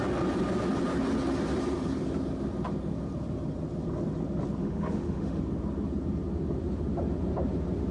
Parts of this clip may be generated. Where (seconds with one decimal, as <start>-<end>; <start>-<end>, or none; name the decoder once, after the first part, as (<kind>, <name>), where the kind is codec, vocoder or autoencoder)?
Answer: 4.6-5.4 (autoencoder, DAC-VAE)